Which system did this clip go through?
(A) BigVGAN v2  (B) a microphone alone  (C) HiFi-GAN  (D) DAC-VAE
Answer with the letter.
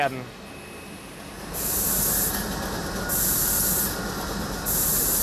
B